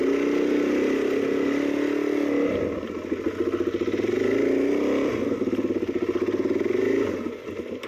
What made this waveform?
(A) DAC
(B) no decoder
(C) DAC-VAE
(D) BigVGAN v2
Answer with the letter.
B